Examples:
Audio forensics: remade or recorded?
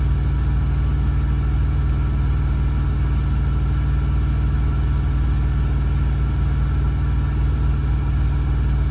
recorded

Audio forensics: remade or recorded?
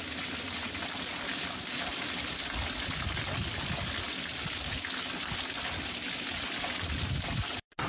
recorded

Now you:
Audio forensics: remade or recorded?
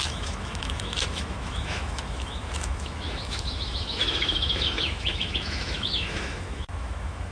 remade